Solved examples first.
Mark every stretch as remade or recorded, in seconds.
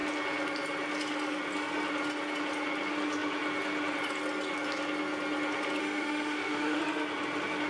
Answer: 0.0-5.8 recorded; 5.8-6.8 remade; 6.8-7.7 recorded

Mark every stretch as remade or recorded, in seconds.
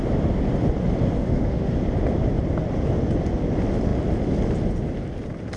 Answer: 0.0-1.2 recorded; 1.2-1.7 remade; 1.7-5.6 recorded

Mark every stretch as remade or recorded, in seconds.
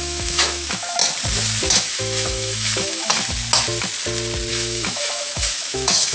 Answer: 0.0-1.0 remade; 1.0-1.7 recorded; 1.7-3.1 remade; 3.1-4.5 recorded; 4.5-6.1 remade